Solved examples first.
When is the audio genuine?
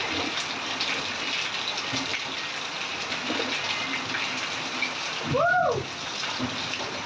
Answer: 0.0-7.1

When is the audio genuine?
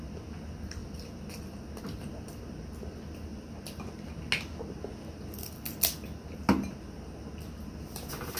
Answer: 0.0-8.4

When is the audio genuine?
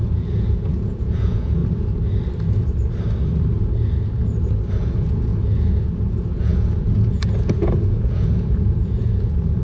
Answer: 1.6-4.7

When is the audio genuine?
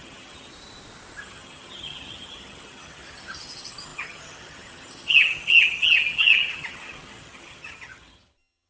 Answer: 0.5-1.2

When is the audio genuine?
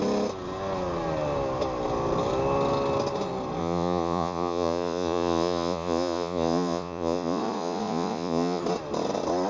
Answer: 0.0-3.6; 8.6-9.5